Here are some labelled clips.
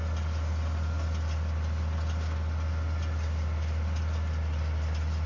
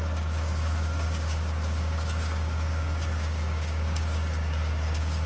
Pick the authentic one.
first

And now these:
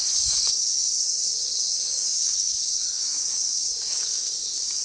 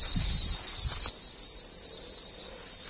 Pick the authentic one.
second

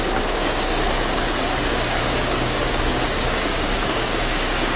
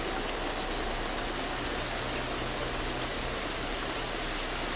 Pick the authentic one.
second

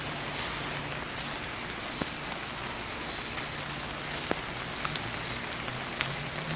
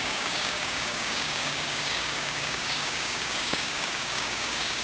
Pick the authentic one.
first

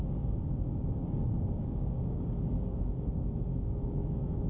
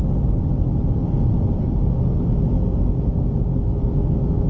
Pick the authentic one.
second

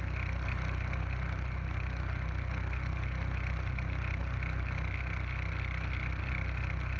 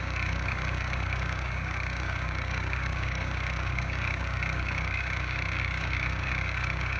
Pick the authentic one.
first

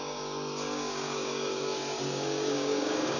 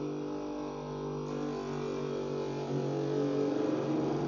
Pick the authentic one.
second